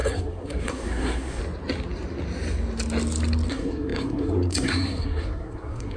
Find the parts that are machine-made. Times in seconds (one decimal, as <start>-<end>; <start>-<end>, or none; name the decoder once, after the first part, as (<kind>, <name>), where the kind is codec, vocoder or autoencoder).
0.0-1.4 (codec, SNAC); 3.5-6.0